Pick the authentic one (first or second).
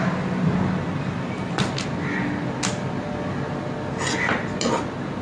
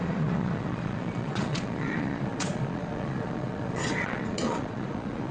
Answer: first